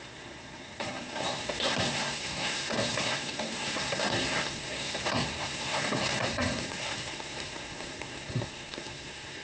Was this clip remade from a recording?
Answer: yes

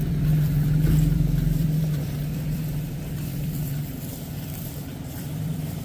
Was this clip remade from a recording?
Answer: yes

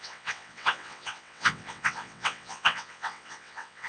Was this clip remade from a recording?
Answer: yes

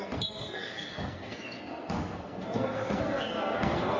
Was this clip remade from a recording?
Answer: yes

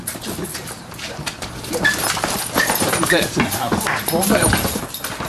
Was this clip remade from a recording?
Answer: yes